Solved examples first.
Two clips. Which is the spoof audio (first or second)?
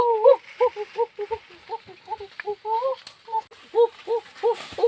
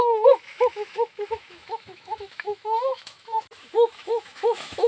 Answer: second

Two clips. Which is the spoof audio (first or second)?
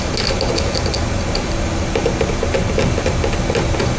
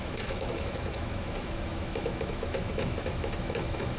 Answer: second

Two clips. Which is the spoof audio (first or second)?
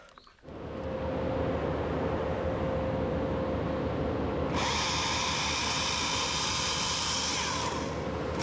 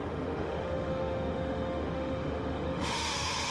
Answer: second